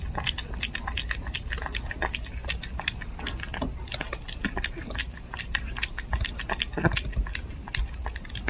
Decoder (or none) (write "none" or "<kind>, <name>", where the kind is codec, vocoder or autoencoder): none